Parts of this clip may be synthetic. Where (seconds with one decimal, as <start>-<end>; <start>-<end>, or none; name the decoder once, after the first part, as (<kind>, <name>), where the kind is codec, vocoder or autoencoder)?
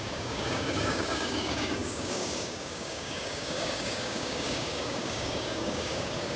0.0-6.4 (codec, DAC)